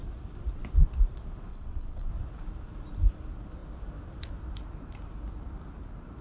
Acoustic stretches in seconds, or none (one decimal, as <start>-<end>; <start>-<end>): 0.0-1.5; 2.1-6.2